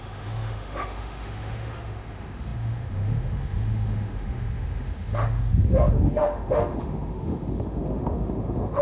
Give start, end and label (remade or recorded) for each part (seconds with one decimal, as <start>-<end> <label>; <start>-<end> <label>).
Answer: 0.0-8.8 remade